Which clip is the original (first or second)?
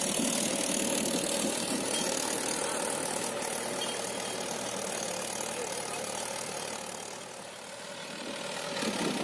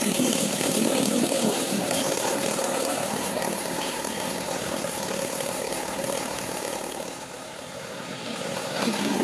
first